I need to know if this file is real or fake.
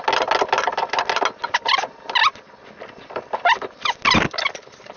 real